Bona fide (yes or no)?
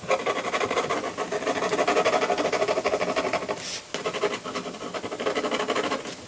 yes